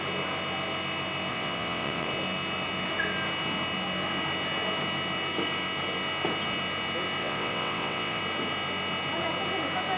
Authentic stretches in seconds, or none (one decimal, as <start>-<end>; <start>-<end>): 0.0-1.3; 2.1-7.2; 8.2-10.0